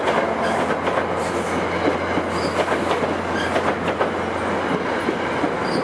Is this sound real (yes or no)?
yes